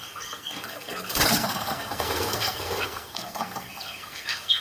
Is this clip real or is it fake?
fake